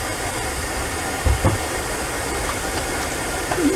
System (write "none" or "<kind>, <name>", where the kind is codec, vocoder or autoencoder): vocoder, BigVGAN v2